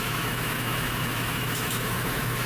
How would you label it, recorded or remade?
remade